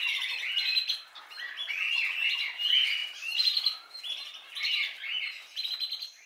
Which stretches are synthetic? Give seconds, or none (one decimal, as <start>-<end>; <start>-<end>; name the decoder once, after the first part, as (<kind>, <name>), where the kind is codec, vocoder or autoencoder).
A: 0.7-1.2 (vocoder, BigVGAN v2); 3.0-5.7